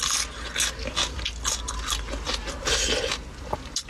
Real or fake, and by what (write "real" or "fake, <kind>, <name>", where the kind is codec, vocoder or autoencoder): real